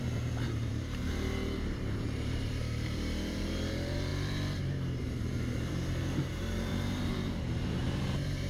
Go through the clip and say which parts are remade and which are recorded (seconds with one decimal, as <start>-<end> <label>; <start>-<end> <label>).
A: 0.0-8.5 remade